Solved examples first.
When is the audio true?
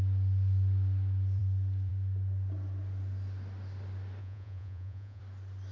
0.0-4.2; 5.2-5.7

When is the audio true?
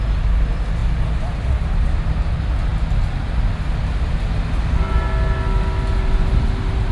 0.0-6.9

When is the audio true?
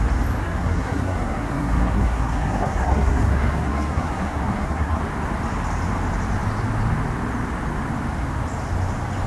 0.0-0.4; 5.0-9.3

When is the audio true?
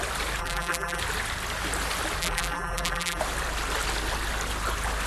0.0-0.4; 1.0-2.2; 3.2-5.1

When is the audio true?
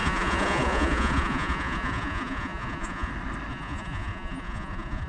3.1-3.5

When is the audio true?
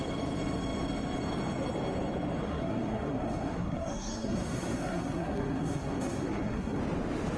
0.0-2.4; 6.8-7.4